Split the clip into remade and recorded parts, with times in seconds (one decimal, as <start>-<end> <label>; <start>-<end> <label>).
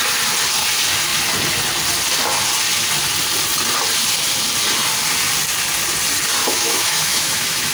0.0-6.4 recorded; 6.4-7.7 remade